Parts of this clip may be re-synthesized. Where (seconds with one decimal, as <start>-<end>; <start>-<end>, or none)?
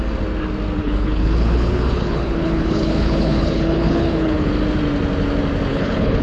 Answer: 0.8-4.5; 5.7-6.2